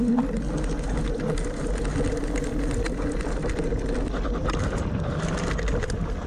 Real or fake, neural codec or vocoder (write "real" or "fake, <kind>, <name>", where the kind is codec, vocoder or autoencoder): real